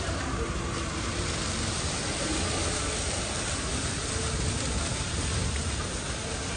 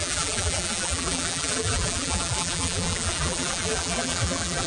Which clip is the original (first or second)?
first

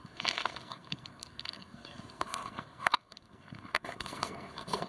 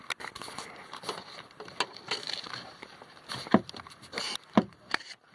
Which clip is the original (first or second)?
second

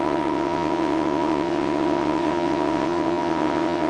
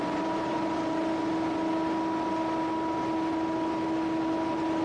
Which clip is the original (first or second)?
second